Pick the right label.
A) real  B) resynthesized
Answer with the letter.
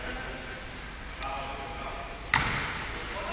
A